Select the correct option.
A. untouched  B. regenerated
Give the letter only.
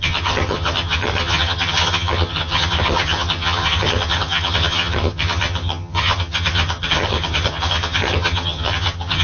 B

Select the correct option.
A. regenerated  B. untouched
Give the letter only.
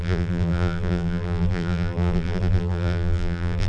A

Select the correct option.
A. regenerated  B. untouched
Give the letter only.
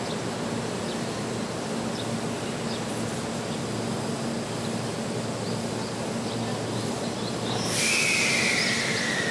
B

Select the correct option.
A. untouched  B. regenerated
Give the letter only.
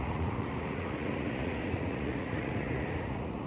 B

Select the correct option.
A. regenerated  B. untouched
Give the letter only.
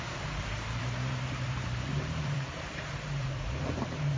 A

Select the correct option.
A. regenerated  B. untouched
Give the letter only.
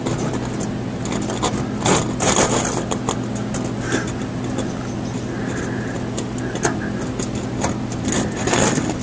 B